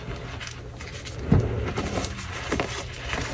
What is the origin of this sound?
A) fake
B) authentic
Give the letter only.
B